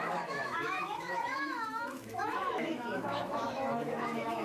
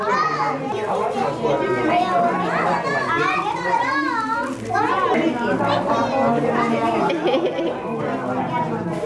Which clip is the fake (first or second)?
first